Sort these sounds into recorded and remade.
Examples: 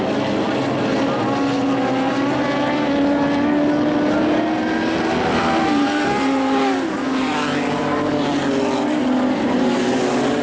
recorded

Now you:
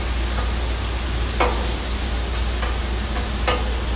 recorded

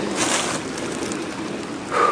recorded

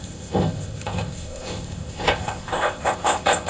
remade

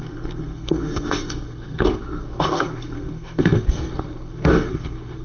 remade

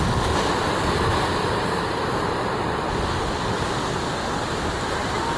recorded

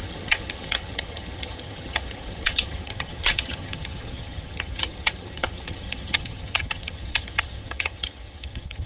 remade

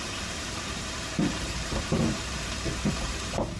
remade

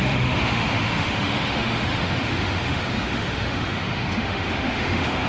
remade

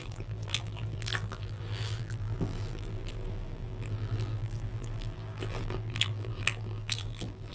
remade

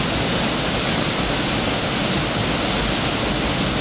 recorded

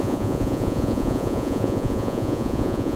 remade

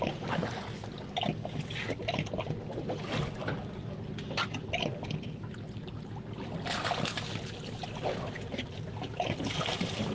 recorded